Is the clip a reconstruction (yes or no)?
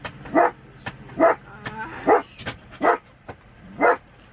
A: no